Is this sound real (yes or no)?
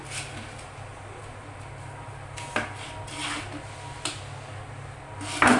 yes